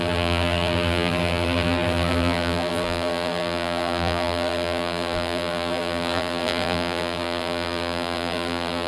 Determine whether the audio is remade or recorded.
remade